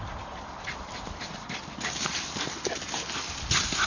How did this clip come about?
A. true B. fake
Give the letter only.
A